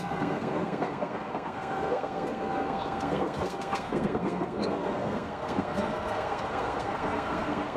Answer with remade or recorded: remade